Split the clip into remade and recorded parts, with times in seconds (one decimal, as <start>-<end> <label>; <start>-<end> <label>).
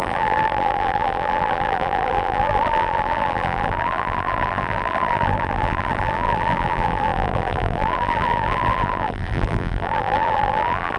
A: 0.0-11.0 remade